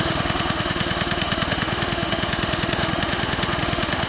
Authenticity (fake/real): fake